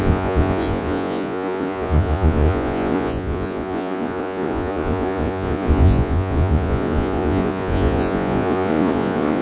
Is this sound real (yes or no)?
no